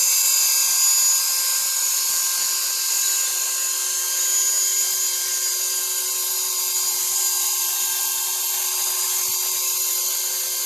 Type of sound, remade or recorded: recorded